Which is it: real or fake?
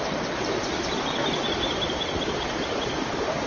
real